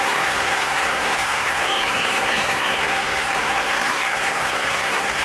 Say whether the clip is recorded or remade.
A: remade